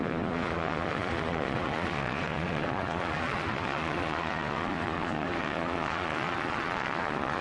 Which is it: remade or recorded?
remade